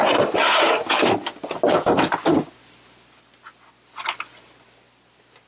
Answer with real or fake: real